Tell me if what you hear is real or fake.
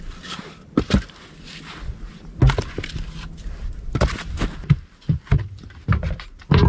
real